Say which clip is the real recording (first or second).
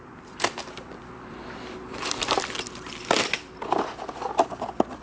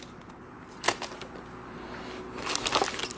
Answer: second